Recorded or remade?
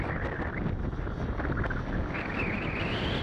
recorded